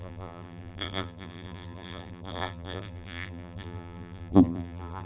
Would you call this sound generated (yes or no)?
yes